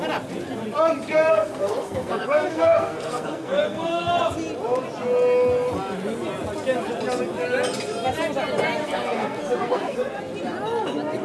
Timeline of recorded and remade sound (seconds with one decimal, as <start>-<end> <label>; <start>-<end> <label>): 0.0-1.3 recorded; 1.3-4.1 remade; 4.1-8.8 recorded; 8.8-10.2 remade; 10.2-11.2 recorded